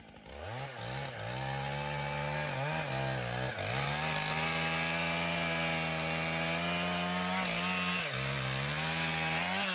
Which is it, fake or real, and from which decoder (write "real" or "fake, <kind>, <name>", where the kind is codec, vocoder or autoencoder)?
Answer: real